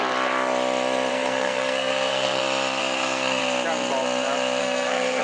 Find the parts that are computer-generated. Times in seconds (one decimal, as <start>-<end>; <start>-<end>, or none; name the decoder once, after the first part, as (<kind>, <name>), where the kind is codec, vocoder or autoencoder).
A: 1.1-2.4 (codec, SNAC); 2.8-3.4; 4.6-5.2